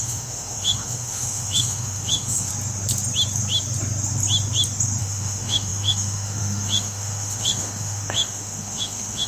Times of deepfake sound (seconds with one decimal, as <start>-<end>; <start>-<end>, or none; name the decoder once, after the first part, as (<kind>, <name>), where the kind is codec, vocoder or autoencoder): 0.0-2.5 (autoencoder, DAC-VAE); 5.0-9.3